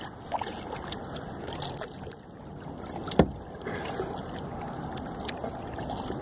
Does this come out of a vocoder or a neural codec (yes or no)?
no